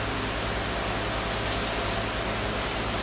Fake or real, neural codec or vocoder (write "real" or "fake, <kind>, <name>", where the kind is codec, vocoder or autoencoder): real